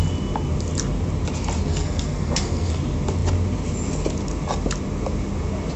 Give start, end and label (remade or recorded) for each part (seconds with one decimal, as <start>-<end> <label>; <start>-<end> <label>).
0.0-1.7 recorded; 1.7-2.8 remade; 2.8-5.8 recorded